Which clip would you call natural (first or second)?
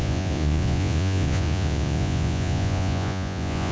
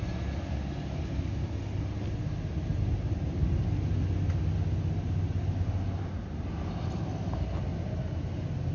second